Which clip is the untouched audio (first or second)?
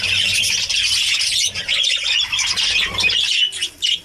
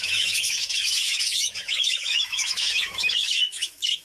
first